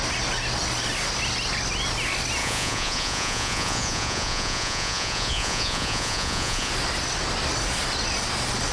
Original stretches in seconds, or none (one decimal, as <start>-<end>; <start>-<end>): 0.0-2.4; 6.7-8.7